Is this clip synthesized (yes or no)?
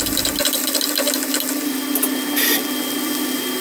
no